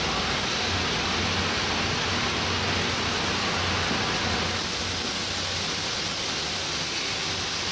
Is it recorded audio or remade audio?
recorded